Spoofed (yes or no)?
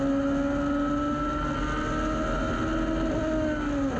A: no